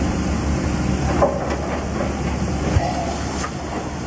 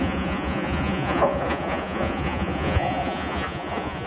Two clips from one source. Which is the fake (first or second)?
second